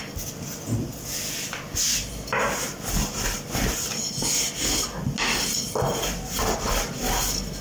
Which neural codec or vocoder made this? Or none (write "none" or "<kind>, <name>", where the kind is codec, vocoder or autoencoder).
none